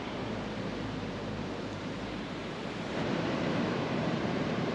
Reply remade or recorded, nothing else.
remade